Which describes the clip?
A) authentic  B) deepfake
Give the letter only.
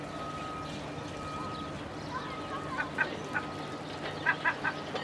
A